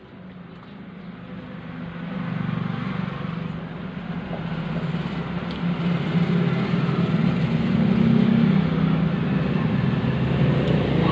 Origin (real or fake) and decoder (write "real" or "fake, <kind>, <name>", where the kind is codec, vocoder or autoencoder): real